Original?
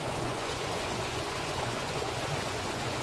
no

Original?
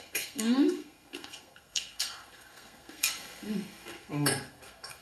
no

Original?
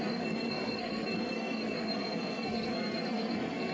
no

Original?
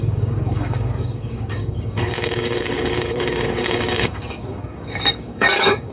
no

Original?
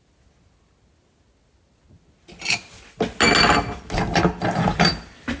yes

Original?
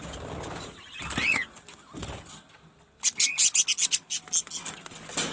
yes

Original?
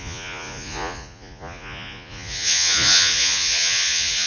no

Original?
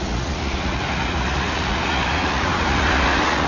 no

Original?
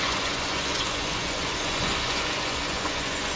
no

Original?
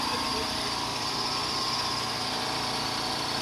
no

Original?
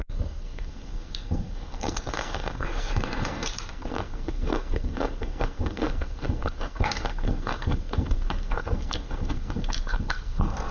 no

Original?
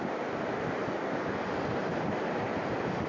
yes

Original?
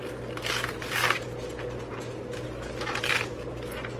yes